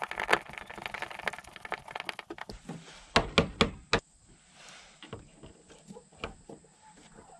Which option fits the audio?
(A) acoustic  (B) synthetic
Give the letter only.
A